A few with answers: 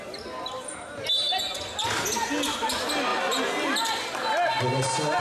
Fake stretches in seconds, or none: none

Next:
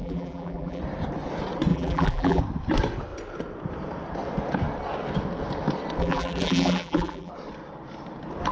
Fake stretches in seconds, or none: 0.0-0.8 (vocoder, BigVGAN v2); 1.7-2.4; 6.0-7.3